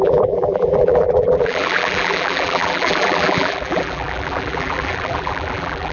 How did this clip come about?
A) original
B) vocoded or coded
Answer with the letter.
B